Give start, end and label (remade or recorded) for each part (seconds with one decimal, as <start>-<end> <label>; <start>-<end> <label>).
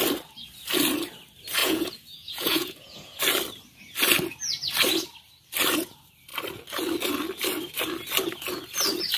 0.0-1.6 recorded; 1.6-3.2 remade; 3.2-9.2 recorded